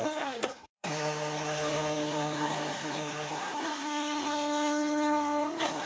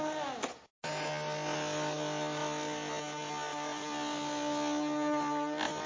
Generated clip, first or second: first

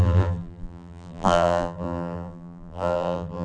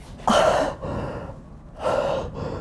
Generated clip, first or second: first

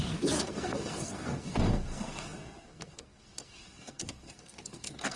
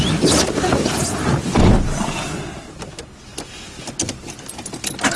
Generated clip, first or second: first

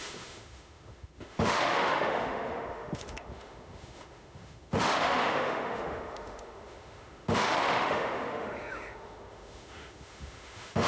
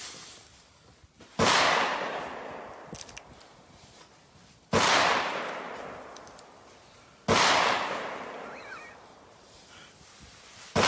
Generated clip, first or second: first